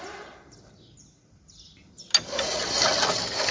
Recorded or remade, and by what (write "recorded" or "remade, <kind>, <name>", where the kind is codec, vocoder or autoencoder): recorded